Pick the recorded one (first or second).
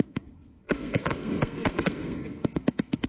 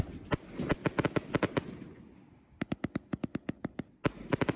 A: second